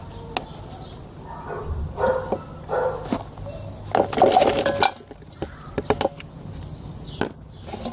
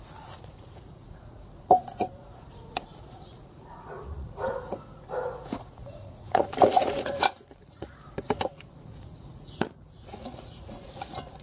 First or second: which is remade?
second